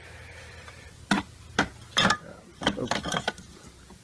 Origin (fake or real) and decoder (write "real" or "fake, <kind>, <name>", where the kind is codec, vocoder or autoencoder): real